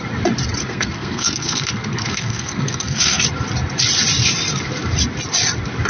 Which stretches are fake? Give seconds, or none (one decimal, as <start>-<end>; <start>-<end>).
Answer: 0.6-3.2